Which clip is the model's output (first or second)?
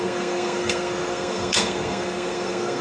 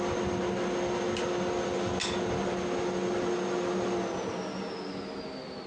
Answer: first